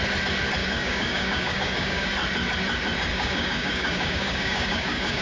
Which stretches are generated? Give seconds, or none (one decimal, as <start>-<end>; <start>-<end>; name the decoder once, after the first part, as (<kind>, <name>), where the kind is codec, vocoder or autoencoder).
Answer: 0.6-2.1 (codec, DAC); 3.1-5.2